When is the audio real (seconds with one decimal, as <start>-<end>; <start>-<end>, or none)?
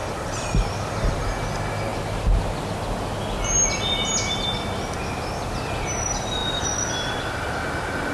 1.2-8.1